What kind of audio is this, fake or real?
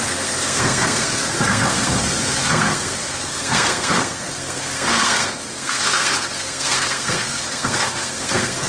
fake